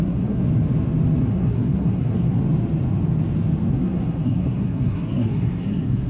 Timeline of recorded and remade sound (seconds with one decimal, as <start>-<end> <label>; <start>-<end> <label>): 0.0-0.4 remade; 0.4-1.2 recorded; 1.2-2.4 remade; 2.4-3.7 recorded; 3.7-6.1 remade